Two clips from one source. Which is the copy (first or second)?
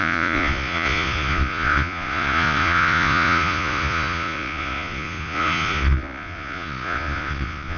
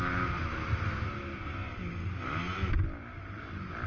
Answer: first